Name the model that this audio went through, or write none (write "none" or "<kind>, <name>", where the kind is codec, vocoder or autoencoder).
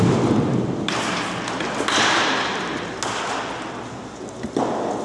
none